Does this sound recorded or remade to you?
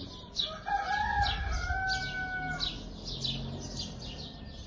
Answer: recorded